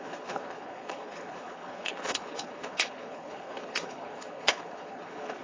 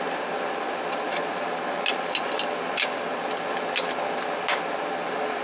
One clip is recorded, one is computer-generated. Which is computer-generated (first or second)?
first